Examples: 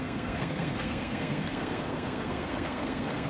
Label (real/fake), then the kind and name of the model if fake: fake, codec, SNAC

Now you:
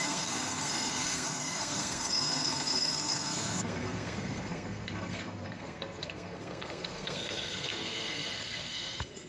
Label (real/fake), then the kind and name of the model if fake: fake, codec, SNAC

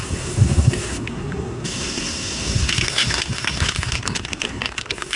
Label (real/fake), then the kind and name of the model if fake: fake, codec, SNAC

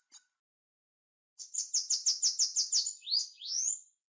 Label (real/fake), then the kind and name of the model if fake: real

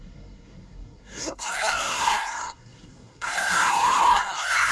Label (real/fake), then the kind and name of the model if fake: fake, codec, SNAC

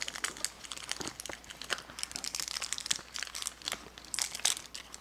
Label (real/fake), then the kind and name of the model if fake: real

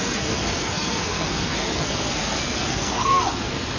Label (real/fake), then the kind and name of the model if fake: fake, codec, SNAC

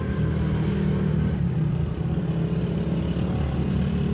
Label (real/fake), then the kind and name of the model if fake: real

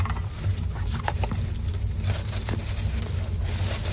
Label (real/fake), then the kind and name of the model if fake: real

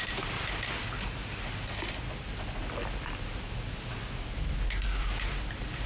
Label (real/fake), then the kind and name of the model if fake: real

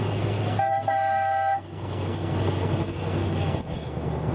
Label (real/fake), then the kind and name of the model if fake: fake, codec, SNAC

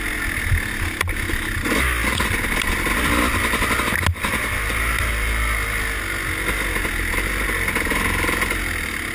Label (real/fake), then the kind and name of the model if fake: real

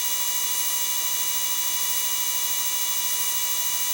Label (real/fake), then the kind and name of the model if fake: real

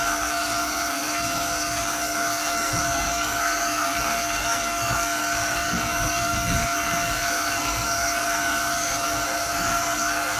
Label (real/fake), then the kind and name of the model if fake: fake, codec, SNAC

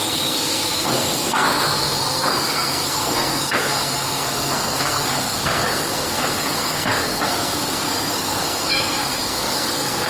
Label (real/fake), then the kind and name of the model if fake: fake, codec, SNAC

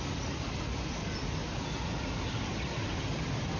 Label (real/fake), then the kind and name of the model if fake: real